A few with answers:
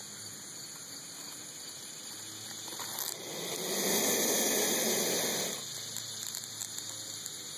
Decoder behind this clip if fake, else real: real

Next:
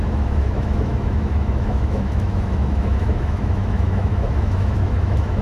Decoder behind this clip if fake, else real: fake, autoencoder, DAC-VAE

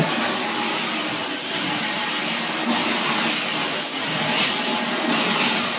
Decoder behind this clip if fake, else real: real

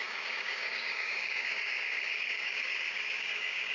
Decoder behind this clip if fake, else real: fake, codec, DAC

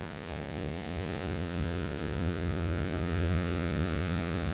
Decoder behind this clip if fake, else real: fake, vocoder, Vocos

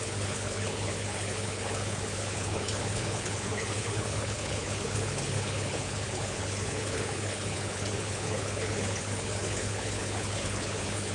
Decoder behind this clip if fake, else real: fake, codec, HILCodec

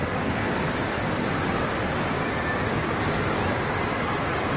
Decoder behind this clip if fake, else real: real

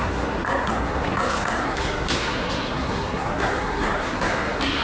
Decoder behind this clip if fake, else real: fake, codec, SNAC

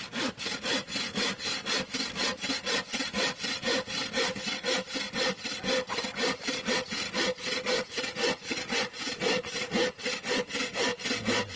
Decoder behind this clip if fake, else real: real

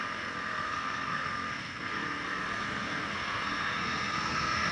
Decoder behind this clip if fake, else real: fake, codec, SNAC